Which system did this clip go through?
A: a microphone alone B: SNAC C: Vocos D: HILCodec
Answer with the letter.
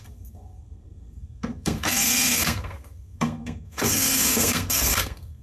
B